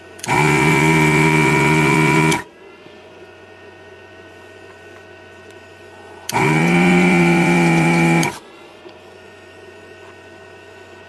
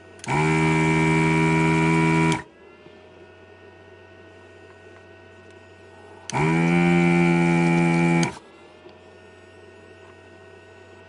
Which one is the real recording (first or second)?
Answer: second